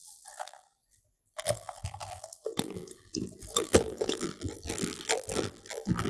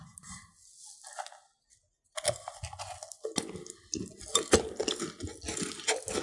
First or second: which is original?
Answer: second